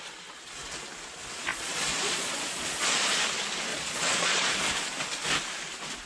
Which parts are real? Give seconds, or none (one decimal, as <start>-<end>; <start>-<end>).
0.0-1.5; 3.2-3.7; 4.7-6.1